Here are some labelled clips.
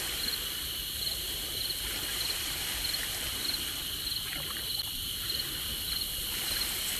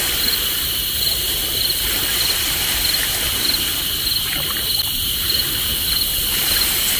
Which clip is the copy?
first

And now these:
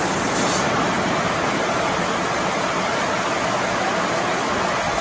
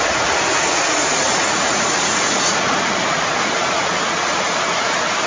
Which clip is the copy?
second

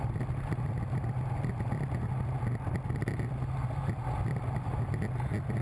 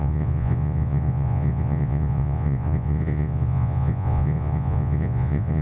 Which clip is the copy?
second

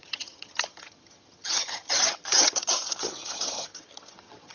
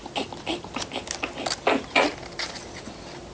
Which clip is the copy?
first